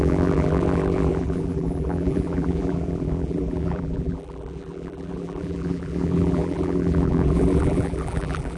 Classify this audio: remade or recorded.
remade